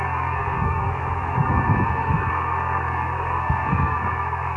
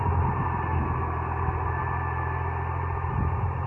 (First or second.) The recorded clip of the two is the second